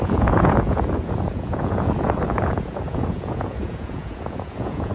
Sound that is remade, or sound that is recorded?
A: remade